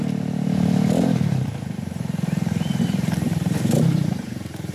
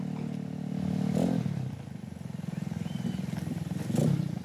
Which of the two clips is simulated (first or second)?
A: first